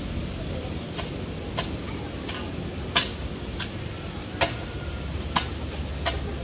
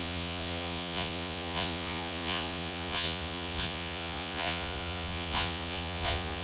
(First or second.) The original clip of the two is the first